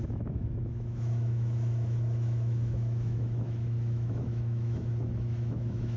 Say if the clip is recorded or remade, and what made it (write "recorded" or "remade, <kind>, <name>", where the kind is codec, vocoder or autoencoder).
remade, autoencoder, DAC-VAE